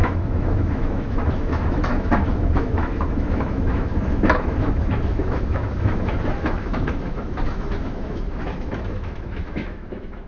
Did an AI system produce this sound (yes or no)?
yes